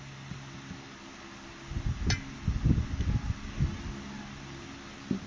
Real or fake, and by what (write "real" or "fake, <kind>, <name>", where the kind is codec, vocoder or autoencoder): real